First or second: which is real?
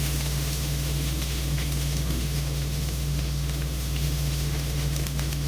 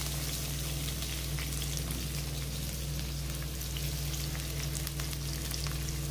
second